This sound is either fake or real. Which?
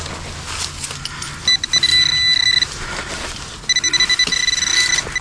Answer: real